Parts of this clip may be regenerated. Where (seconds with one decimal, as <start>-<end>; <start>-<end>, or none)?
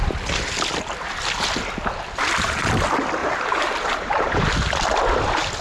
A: 3.2-4.4